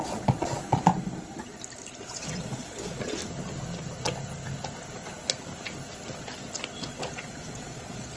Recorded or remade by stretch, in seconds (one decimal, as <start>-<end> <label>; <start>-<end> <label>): 0.0-0.9 remade; 0.9-2.0 recorded; 2.0-3.2 remade; 3.2-6.8 recorded; 6.8-8.2 remade